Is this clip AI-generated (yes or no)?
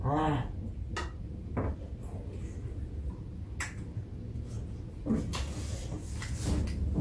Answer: no